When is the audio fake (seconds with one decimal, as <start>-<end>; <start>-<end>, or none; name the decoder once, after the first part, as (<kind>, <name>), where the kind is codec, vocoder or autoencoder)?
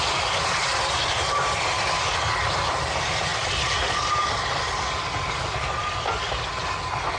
none